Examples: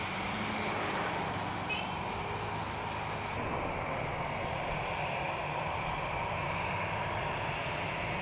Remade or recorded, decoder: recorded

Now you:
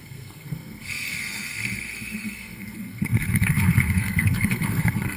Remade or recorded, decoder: remade, codec, SNAC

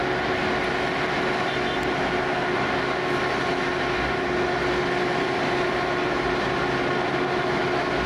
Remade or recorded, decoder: recorded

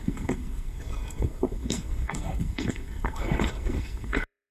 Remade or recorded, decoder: remade, codec, SNAC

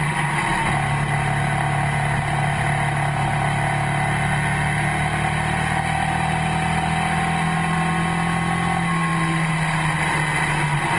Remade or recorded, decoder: recorded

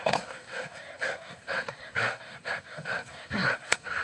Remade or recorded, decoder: remade, codec, SNAC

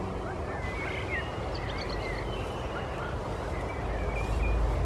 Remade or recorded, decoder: recorded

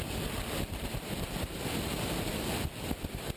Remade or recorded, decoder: recorded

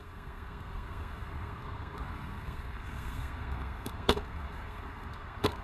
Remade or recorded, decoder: remade, codec, SNAC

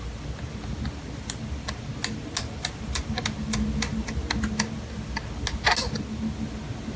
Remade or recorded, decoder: recorded